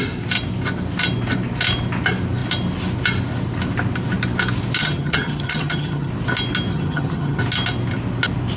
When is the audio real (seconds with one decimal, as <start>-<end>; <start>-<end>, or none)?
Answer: 0.0-4.8; 6.1-6.7; 7.4-8.6